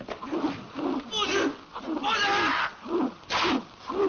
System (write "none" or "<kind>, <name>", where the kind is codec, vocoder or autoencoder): none